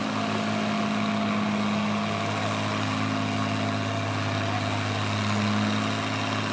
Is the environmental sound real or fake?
real